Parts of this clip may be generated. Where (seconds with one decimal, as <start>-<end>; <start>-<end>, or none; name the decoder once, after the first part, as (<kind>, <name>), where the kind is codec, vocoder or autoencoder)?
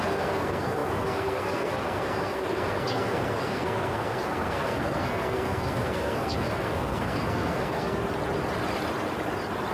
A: 0.0-8.0 (codec, SNAC)